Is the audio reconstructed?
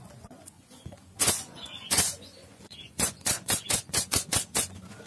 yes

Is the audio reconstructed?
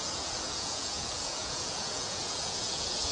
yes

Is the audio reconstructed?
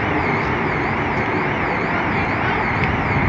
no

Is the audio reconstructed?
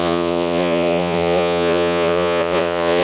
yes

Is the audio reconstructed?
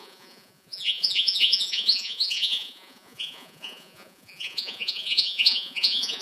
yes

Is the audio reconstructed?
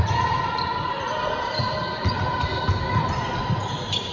no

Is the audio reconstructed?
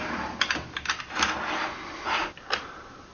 no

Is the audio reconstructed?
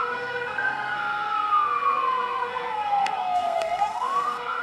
yes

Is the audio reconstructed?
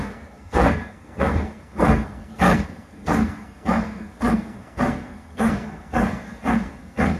yes